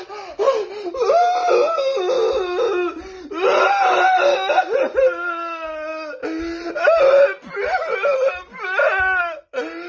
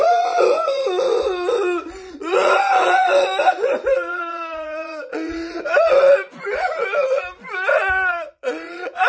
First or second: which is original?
first